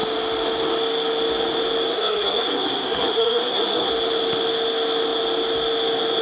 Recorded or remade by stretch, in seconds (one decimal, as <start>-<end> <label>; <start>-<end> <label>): 0.0-1.9 recorded; 1.9-3.9 remade; 3.9-6.2 recorded